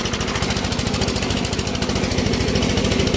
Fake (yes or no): no